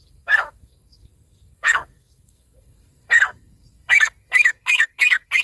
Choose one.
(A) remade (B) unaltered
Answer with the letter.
A